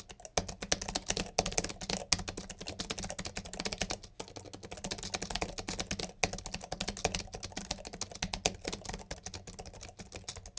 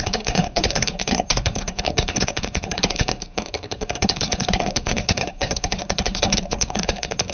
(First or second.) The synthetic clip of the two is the second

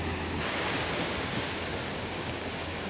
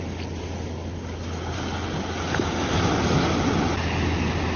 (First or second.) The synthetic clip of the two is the first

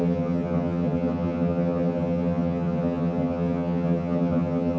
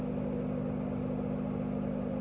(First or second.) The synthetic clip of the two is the first